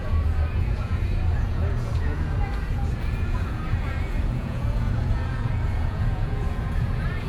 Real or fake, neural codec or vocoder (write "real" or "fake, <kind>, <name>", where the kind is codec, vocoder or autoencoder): fake, vocoder, Vocos